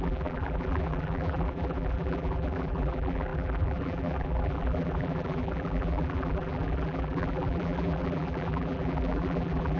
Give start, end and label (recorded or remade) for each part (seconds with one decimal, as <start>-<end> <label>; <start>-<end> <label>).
0.0-9.8 remade